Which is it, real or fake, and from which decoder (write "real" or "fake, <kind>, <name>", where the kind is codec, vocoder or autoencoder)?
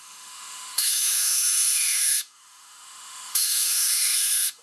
fake, autoencoder, DAC-VAE